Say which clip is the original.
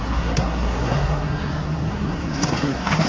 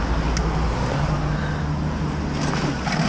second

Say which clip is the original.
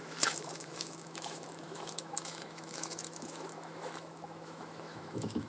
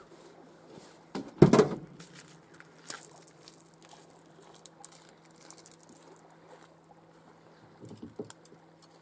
second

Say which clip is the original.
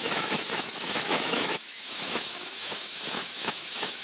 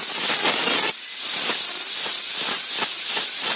second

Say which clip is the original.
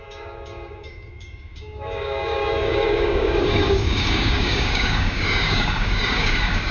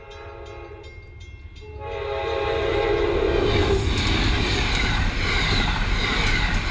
second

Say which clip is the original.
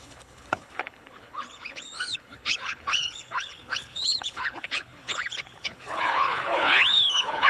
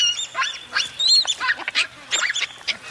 second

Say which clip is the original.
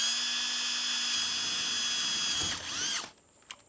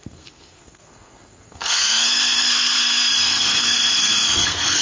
first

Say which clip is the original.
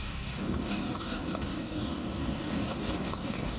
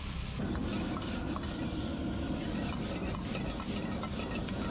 second